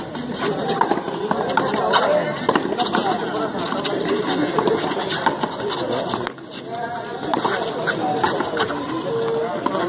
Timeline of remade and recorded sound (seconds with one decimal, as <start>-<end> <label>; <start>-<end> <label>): 0.0-9.9 recorded